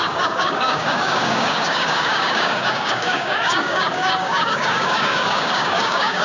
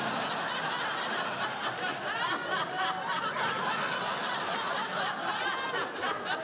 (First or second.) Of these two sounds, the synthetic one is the first